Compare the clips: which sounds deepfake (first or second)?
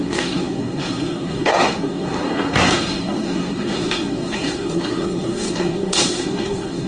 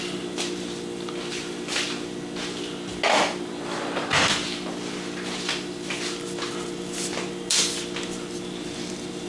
first